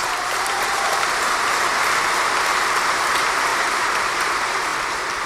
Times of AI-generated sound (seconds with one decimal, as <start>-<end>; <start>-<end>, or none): 0.0-1.7; 2.9-4.7